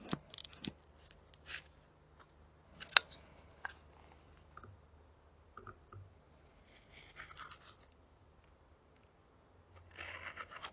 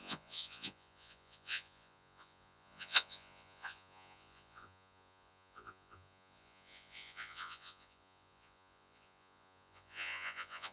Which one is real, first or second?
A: first